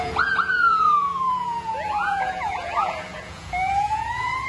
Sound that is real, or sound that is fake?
fake